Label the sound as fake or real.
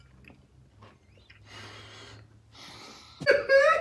real